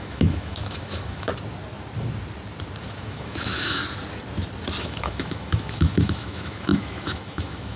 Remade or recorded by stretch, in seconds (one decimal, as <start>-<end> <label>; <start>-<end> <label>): 0.0-1.3 remade; 1.3-2.8 recorded; 2.8-3.8 remade; 3.8-4.8 recorded; 4.8-7.8 remade